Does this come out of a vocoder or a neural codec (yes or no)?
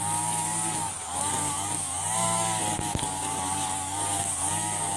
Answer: yes